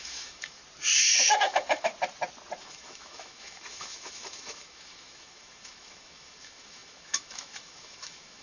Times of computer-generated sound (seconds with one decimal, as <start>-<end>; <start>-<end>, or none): 0.0-0.6; 1.2-1.9; 2.6-8.4